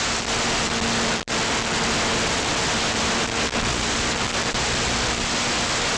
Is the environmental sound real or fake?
real